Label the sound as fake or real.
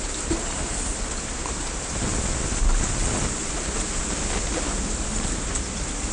real